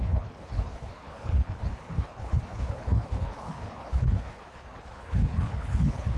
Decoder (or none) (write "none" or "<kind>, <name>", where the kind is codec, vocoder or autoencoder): codec, HILCodec